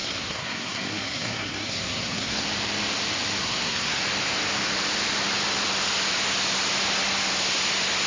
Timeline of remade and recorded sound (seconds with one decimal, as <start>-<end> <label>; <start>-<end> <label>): 0.0-2.4 remade; 2.4-3.4 recorded; 3.4-4.0 remade; 4.0-8.1 recorded